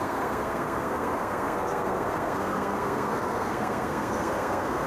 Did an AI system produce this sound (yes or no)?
yes